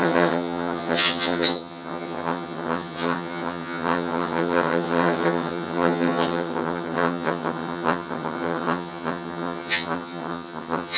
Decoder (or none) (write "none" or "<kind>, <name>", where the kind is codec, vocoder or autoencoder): vocoder, HiFi-GAN